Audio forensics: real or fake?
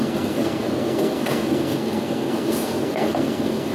fake